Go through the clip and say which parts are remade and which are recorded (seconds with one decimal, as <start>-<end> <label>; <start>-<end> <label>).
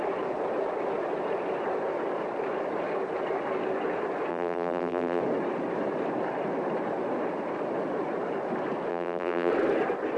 0.0-4.3 recorded; 4.3-5.2 remade; 5.2-8.9 recorded; 8.9-9.5 remade; 9.5-10.2 recorded